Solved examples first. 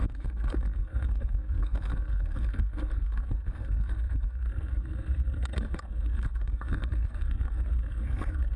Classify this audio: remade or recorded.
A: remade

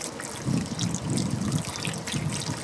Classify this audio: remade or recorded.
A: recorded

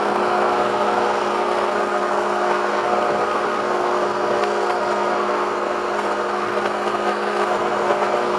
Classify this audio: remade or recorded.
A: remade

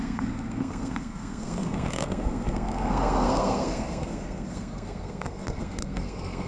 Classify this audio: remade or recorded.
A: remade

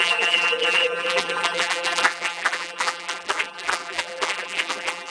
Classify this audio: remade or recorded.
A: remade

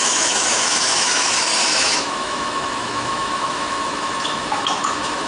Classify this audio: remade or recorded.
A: remade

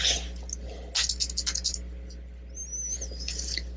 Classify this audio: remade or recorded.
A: recorded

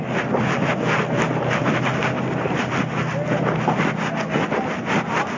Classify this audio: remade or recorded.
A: recorded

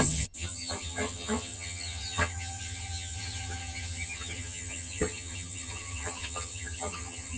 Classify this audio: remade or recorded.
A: remade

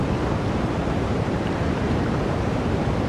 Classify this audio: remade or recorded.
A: remade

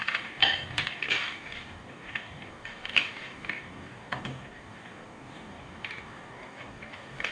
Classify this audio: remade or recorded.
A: remade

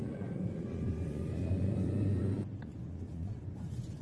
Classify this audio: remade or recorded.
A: remade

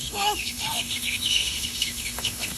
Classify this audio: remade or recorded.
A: remade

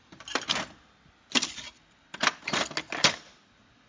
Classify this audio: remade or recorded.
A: recorded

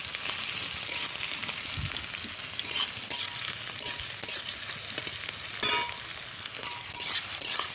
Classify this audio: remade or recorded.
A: recorded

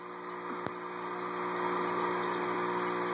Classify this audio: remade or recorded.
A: recorded